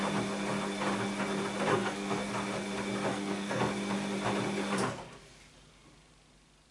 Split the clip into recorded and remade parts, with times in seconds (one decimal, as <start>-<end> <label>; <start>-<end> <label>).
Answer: 0.0-1.7 recorded; 1.7-2.3 remade; 2.3-3.1 recorded; 3.1-3.7 remade; 3.7-6.7 recorded